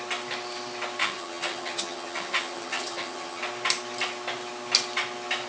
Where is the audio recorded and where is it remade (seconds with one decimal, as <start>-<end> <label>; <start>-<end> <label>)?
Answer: 0.0-1.0 recorded; 1.0-3.4 remade; 3.4-5.5 recorded